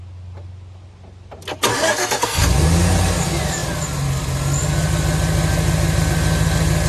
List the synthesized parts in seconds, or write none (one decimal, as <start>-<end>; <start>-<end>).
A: 1.7-2.4